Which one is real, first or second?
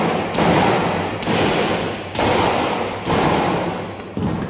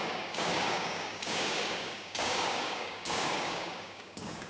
first